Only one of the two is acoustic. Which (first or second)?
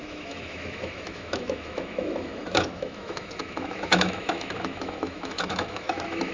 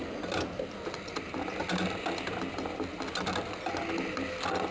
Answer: second